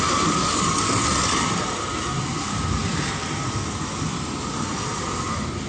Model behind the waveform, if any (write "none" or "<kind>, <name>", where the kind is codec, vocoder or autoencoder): none